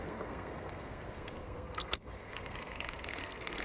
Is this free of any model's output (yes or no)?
no